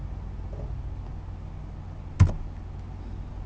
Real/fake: real